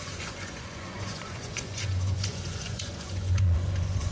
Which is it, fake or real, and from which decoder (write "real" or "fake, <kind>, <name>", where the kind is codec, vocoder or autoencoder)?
fake, vocoder, Vocos